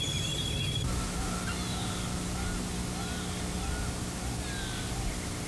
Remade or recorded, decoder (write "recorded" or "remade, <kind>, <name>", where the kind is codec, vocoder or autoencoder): recorded